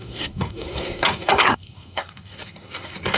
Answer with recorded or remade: remade